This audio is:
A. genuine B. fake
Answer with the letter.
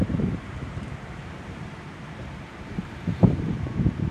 B